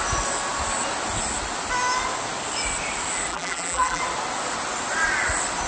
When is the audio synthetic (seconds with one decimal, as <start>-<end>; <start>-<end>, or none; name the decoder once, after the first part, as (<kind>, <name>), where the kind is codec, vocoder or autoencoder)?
3.3-4.0 (vocoder, BigVGAN v2)